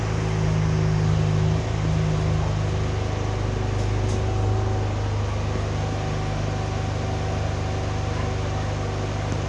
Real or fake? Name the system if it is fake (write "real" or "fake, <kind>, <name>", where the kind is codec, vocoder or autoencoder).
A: real